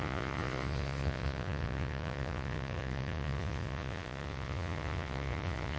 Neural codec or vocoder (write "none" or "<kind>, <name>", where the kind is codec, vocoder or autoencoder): vocoder, Vocos